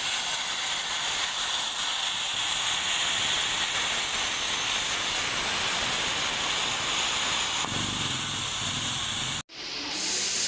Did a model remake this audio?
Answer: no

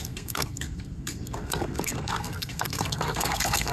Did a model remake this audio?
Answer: yes